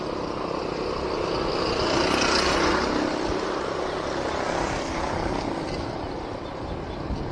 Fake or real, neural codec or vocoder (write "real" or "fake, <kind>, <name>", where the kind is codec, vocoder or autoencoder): real